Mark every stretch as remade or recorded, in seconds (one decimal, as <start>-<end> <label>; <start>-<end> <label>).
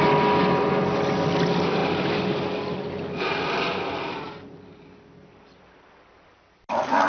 0.0-7.1 recorded